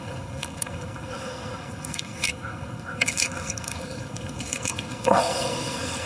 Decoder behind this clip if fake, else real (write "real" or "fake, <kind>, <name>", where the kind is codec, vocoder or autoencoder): fake, codec, SNAC